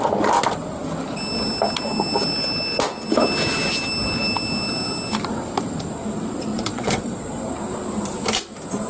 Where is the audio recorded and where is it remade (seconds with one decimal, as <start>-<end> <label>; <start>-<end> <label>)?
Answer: 0.0-6.5 recorded; 6.5-7.4 remade; 7.4-8.9 recorded